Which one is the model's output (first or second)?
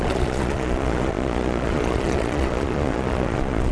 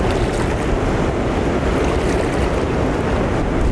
first